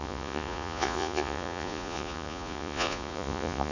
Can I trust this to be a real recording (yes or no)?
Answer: no